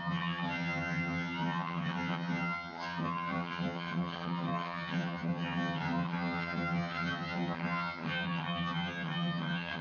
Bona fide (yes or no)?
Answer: no